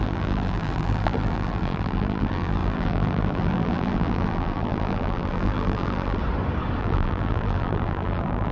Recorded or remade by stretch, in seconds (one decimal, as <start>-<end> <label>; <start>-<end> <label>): 0.0-6.2 remade; 6.2-6.8 recorded; 6.8-8.5 remade

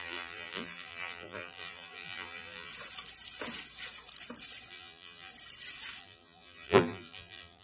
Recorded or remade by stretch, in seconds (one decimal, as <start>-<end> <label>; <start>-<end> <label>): 0.0-2.7 remade; 2.7-4.7 recorded; 4.7-5.3 remade; 5.3-6.0 recorded; 6.0-7.6 remade

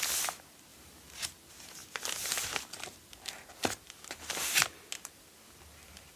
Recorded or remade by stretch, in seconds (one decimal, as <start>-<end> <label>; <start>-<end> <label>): 0.0-6.2 recorded

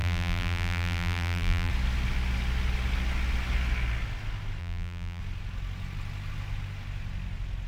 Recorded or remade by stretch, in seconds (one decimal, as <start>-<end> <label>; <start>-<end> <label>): 0.0-1.7 remade; 1.7-4.6 recorded; 4.6-5.2 remade; 5.2-7.7 recorded